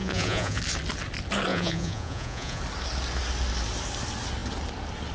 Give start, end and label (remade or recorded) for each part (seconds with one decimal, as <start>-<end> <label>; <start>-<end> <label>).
0.0-0.6 remade; 0.6-1.5 recorded; 1.5-2.6 remade; 2.6-5.1 recorded